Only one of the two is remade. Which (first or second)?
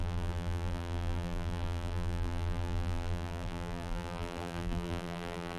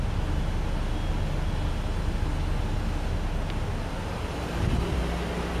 first